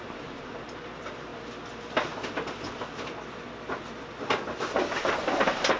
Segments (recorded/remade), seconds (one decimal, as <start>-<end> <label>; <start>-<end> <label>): 0.0-1.3 remade; 1.3-4.8 recorded; 4.8-5.8 remade